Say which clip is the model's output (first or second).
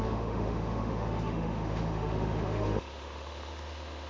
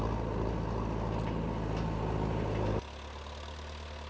first